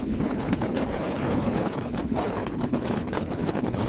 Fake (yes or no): yes